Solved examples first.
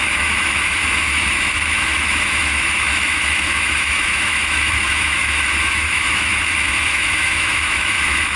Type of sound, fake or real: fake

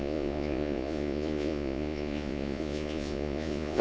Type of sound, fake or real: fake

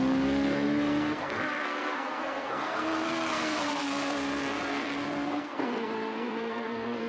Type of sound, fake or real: fake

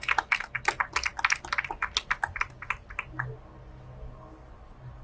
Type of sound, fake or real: real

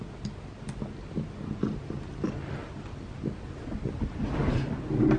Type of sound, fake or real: real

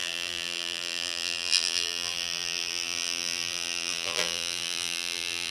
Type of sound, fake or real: fake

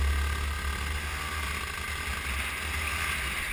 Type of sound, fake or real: real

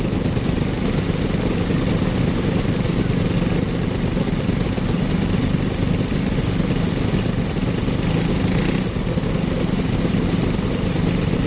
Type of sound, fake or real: real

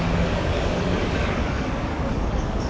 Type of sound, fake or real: fake